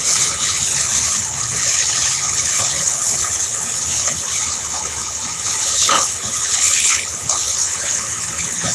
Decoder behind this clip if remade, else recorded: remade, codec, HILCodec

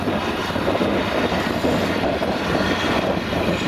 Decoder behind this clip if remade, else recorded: recorded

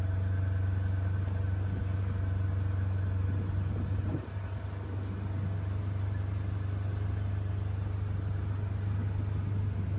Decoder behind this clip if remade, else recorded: recorded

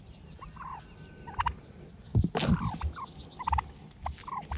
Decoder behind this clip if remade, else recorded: recorded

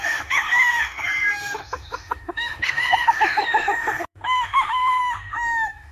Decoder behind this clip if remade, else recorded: remade, autoencoder, DAC-VAE